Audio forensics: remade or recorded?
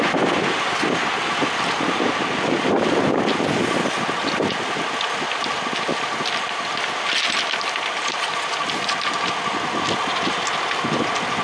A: recorded